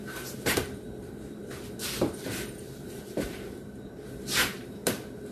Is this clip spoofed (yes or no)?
yes